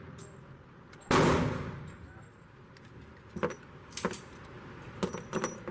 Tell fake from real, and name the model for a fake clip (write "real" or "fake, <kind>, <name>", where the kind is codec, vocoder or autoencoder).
real